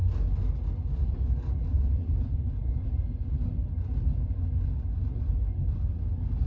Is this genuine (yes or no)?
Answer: yes